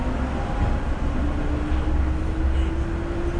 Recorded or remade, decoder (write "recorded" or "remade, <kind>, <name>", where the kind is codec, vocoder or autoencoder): recorded